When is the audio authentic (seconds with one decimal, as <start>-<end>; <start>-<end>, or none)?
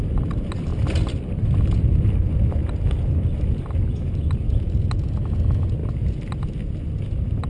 0.0-7.5